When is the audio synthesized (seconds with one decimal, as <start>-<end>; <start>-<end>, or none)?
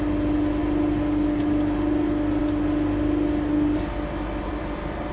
none